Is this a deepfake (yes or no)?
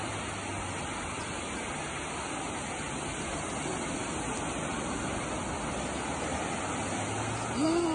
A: no